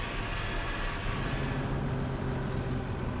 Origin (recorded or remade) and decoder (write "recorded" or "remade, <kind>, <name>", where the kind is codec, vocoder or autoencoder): recorded